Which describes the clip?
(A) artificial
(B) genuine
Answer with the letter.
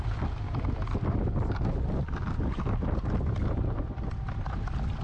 B